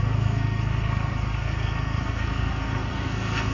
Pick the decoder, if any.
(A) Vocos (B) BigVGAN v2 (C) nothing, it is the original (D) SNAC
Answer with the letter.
D